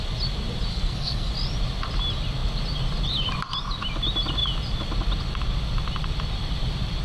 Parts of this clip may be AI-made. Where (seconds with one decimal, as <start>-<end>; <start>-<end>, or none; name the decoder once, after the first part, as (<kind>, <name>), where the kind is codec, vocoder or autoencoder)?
0.7-1.3 (codec, SNAC)